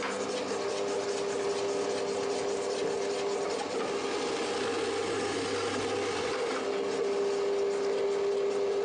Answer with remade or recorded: recorded